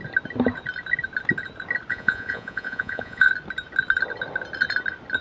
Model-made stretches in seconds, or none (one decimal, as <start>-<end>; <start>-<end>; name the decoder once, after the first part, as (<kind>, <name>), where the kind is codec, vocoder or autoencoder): 1.9-3.3 (vocoder, Vocos)